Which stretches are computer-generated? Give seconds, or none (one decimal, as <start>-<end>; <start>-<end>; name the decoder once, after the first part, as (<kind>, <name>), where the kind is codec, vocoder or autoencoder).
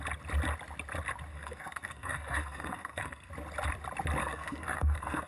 1.3-3.3 (codec, SNAC); 4.2-5.3